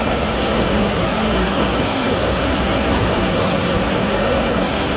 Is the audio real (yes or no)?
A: no